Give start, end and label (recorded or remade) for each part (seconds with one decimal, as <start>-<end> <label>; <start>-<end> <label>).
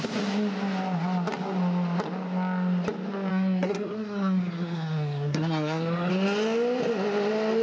0.0-3.3 recorded; 3.3-6.1 remade; 6.1-7.6 recorded